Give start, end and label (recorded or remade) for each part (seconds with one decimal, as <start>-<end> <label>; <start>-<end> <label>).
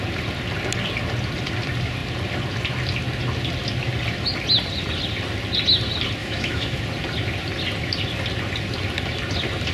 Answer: 0.0-6.2 recorded; 6.2-6.8 remade; 6.8-9.7 recorded